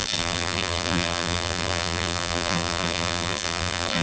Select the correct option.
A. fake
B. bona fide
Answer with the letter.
A